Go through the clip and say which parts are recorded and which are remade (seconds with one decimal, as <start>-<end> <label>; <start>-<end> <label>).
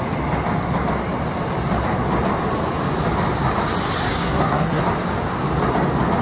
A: 0.0-4.1 recorded; 4.1-4.8 remade; 4.8-6.2 recorded